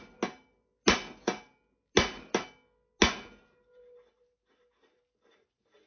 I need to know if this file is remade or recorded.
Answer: recorded